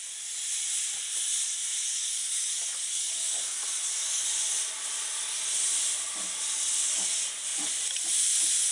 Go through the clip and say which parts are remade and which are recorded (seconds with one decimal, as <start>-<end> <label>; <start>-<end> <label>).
0.0-1.6 recorded; 1.6-4.2 remade; 4.2-8.7 recorded